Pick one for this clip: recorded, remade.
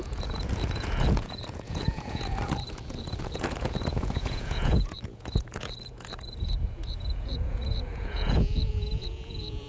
remade